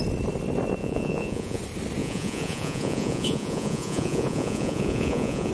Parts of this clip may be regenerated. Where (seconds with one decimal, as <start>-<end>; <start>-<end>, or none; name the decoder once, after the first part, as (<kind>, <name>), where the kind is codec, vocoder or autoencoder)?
0.8-1.6 (vocoder, Vocos); 2.0-5.5